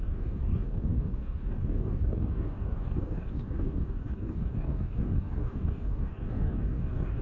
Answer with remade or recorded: remade